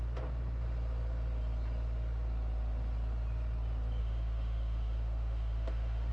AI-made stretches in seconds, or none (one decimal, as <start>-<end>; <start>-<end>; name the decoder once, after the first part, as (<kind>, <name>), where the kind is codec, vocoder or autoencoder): 4.0-6.1 (autoencoder, DAC-VAE)